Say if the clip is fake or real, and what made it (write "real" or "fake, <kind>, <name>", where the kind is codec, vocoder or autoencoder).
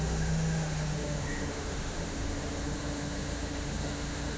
fake, autoencoder, DAC-VAE